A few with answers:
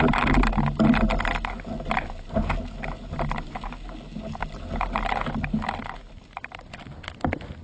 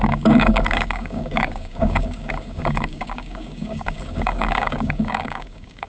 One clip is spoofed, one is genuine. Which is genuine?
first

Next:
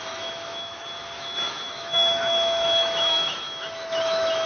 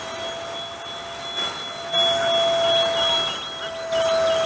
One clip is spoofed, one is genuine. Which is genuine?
second